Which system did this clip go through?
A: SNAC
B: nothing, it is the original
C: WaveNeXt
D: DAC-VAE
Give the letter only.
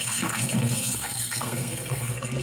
A